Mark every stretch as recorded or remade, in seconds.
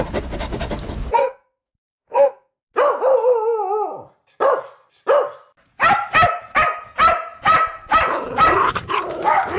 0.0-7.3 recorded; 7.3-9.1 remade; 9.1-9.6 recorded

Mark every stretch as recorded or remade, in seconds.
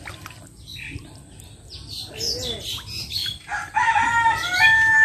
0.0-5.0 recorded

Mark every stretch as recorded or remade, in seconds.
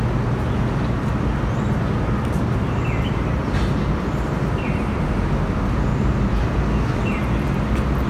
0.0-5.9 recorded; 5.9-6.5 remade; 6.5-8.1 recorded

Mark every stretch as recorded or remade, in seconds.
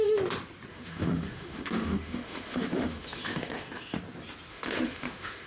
0.0-0.7 recorded; 0.7-4.0 remade; 4.0-4.5 recorded; 4.5-5.5 remade